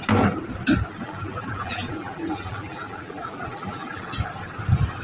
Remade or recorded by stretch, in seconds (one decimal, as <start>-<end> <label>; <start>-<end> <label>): 0.0-1.0 recorded; 1.0-4.0 remade; 4.0-5.0 recorded